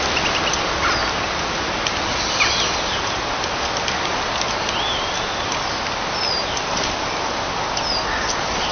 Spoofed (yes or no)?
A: no